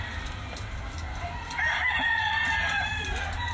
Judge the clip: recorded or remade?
recorded